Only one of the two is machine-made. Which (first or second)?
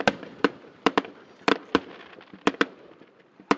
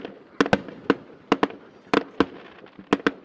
first